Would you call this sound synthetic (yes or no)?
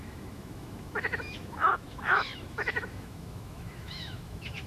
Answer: yes